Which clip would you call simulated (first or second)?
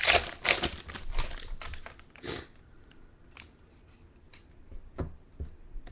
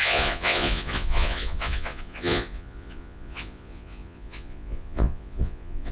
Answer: second